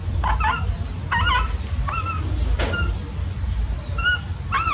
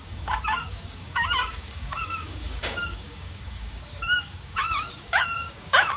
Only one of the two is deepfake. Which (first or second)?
second